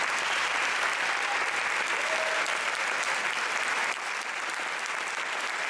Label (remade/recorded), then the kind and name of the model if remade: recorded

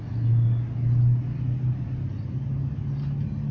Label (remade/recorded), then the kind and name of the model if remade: recorded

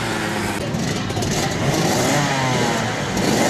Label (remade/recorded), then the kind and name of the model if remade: recorded